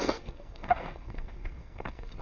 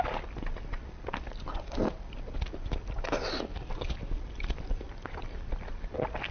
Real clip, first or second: second